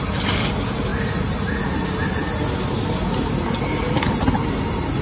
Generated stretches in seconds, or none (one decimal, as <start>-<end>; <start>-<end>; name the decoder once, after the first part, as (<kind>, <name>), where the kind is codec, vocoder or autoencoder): none